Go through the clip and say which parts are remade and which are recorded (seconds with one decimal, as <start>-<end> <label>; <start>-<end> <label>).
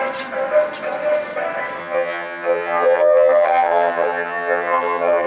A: 0.0-1.8 recorded; 1.8-5.3 remade